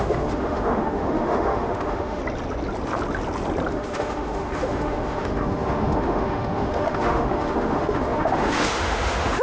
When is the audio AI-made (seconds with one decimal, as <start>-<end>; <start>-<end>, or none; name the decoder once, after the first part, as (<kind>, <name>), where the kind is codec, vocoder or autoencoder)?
0.0-2.2 (autoencoder, DAC-VAE); 3.7-9.4